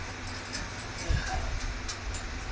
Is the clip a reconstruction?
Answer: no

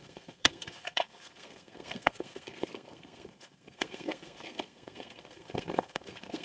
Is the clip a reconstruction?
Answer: yes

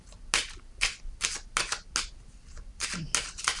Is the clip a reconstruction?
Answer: no